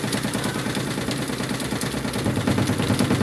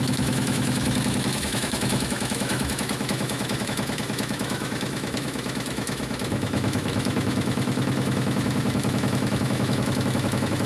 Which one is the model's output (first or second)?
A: second